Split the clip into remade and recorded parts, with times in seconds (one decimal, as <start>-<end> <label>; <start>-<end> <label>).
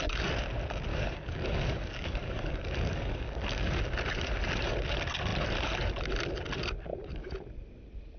0.0-0.9 recorded; 0.9-3.8 remade; 3.8-8.2 recorded